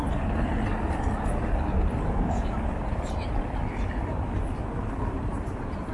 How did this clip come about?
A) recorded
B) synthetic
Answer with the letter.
A